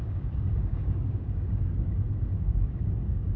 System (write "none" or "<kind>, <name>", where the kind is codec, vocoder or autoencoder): codec, DAC